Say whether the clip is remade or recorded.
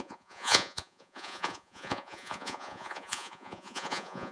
remade